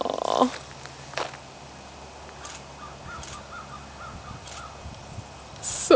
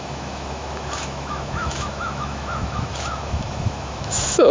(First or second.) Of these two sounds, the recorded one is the first